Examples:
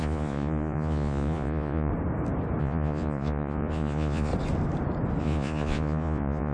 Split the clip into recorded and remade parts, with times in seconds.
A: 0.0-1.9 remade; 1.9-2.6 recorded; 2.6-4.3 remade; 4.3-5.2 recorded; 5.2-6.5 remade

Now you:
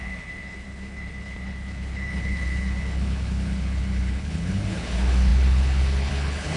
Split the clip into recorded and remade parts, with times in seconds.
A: 0.0-6.6 remade

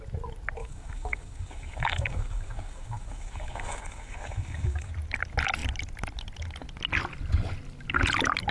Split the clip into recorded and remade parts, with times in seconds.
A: 0.0-0.6 recorded; 0.6-4.9 remade; 4.9-8.5 recorded

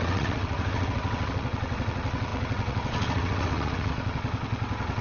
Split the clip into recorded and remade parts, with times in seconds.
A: 0.0-5.0 remade